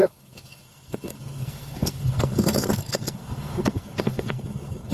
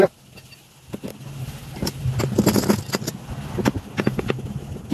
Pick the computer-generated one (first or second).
first